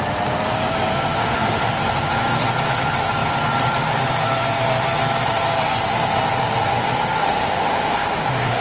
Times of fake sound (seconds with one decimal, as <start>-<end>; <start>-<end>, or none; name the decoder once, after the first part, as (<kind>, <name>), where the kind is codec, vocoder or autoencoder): 1.2-1.7 (autoencoder, DAC-VAE); 7.2-8.6

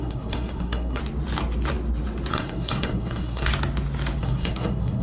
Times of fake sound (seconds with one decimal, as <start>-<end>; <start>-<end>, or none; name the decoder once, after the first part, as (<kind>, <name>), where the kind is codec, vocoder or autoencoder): 0.0-1.0 (codec, SNAC); 2.3-3.5; 4.2-5.0

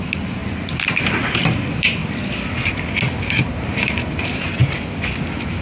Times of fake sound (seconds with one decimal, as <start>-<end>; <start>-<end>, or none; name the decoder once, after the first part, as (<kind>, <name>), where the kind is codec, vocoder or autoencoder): 0.0-2.0 (vocoder, BigVGAN v2); 3.3-4.6

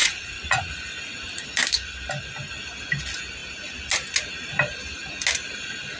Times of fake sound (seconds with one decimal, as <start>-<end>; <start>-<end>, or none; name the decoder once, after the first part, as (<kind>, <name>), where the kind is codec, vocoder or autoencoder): 0.0-0.7 (vocoder, Vocos)